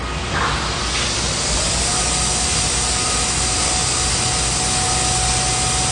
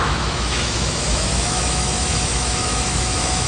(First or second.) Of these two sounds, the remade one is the second